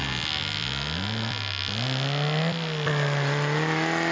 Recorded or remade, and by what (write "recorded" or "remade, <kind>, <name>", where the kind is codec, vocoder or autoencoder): recorded